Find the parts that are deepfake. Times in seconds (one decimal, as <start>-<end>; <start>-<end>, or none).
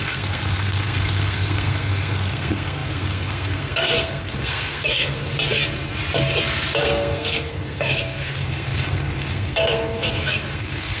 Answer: 0.0-5.3; 6.8-11.0